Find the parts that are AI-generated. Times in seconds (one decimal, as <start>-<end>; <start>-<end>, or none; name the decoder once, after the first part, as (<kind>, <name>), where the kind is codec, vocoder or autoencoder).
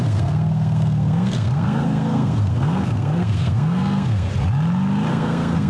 0.0-4.3 (codec, SNAC); 5.1-5.7